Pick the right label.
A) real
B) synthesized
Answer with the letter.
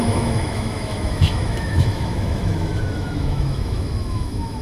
B